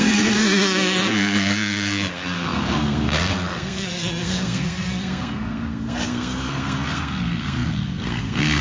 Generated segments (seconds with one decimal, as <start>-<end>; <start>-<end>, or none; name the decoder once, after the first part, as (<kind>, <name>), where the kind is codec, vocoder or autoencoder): 0.0-8.6 (codec, SNAC)